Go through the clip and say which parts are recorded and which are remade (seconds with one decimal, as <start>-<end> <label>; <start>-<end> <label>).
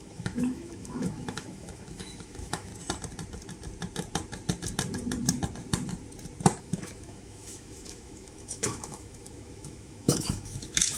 0.0-2.7 remade; 2.7-6.6 recorded; 6.6-11.0 remade